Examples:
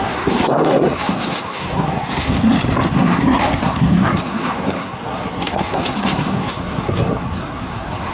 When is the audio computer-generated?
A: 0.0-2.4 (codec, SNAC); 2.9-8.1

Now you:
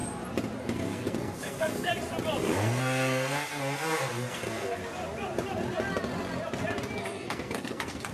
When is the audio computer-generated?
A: 0.6-1.9 (codec, SNAC); 2.4-4.8; 7.0-8.1

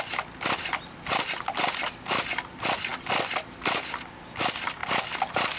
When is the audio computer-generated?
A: none

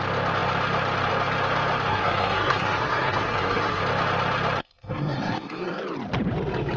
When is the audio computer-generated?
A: 1.9-3.8 (codec, SNAC); 4.6-5.8

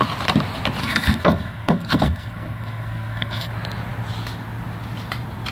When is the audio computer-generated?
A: 0.8-3.5 (codec, SNAC)

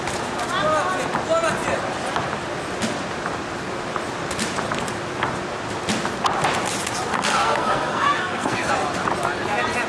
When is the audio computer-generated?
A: 7.1-8.7 (codec, SNAC)

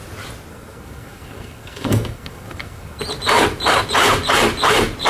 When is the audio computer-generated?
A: 0.5-3.0 (codec, SNAC)

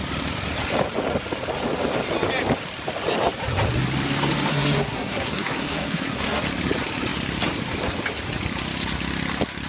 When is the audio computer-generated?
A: 4.5-6.4 (codec, SNAC)